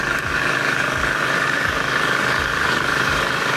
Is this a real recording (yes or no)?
no